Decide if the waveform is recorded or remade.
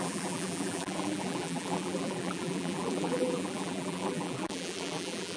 remade